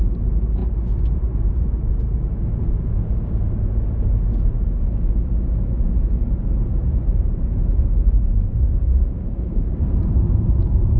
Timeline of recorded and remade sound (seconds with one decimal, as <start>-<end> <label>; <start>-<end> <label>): 0.0-4.1 remade; 4.1-6.4 recorded; 6.4-11.0 remade